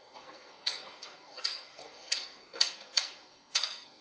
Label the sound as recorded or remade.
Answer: remade